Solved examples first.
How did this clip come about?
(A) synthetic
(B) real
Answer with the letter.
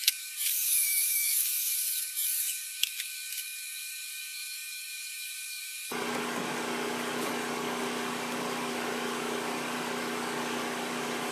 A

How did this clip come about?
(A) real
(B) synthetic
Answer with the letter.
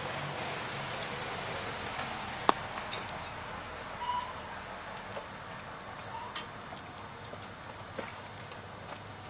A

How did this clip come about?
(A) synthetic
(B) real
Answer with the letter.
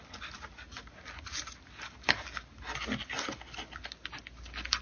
B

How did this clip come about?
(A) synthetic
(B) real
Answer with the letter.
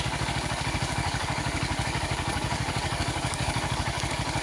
A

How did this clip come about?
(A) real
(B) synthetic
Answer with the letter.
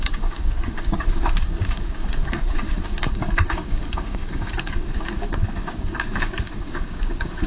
B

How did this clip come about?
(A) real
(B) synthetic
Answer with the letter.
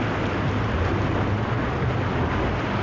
A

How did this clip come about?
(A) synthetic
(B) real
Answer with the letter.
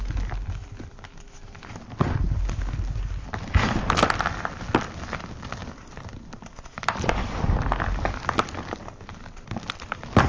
B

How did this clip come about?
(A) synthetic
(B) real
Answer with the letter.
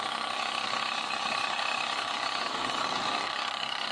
A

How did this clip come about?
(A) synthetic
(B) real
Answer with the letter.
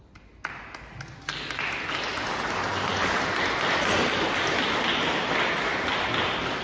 B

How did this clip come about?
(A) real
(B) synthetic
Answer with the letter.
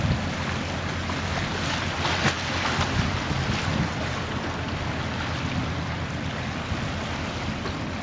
A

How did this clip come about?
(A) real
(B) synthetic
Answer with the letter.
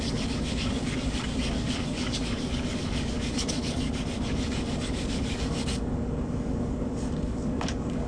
B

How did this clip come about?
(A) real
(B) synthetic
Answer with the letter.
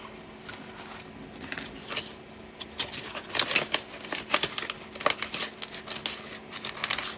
A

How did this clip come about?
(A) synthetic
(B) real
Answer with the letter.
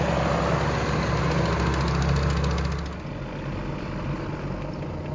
B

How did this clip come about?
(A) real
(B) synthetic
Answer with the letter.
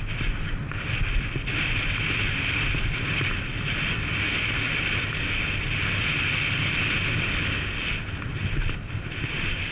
A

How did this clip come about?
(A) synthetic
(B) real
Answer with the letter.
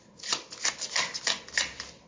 B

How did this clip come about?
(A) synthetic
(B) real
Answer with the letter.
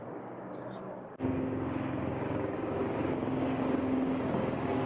A